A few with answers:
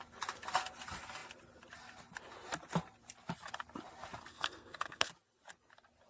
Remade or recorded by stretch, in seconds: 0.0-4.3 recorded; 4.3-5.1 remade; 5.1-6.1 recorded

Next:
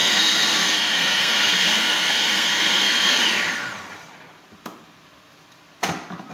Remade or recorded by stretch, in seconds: 0.0-3.2 remade; 3.2-6.3 recorded

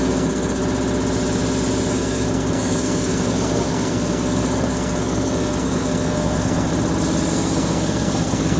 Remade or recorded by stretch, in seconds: 0.0-0.6 remade; 0.6-1.9 recorded; 1.9-6.7 remade; 6.7-7.3 recorded; 7.3-8.6 remade

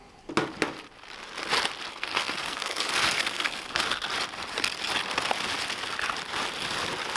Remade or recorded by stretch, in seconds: 0.0-1.9 recorded; 1.9-3.8 remade; 3.8-7.2 recorded

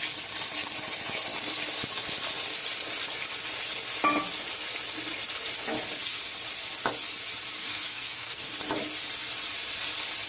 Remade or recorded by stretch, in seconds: 0.0-7.6 recorded; 7.6-8.5 remade; 8.5-10.3 recorded

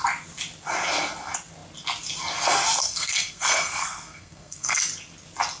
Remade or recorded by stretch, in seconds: 0.0-2.8 recorded; 2.8-4.8 remade; 4.8-5.6 recorded

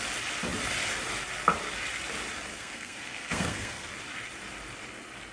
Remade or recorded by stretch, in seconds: 0.0-2.5 recorded; 2.5-3.9 remade; 3.9-5.3 recorded